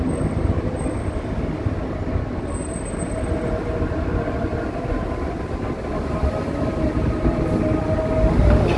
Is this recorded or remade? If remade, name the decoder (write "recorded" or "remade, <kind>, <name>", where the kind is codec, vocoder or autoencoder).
recorded